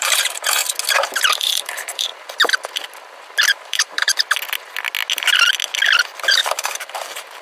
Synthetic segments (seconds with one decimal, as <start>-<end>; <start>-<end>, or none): 0.0-0.6; 1.4-2.1; 3.5-4.1; 6.0-7.4